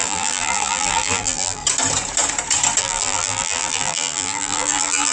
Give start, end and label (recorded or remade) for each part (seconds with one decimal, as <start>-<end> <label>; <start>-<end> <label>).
0.0-1.6 remade; 1.6-2.8 recorded; 2.8-5.1 remade